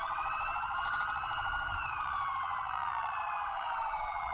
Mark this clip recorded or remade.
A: remade